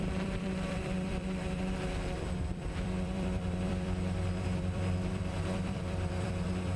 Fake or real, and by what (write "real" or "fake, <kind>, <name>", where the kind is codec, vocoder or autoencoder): fake, vocoder, BigVGAN v2